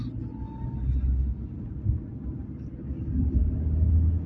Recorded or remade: recorded